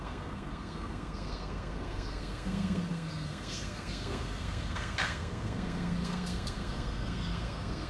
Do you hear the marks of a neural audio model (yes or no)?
yes